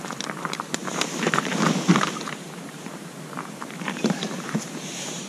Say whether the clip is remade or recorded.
remade